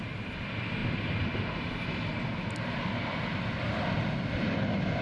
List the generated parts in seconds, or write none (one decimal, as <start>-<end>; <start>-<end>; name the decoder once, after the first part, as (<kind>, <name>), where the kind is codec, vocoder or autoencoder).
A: none